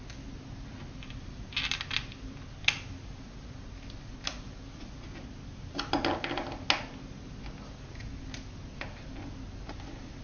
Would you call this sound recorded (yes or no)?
yes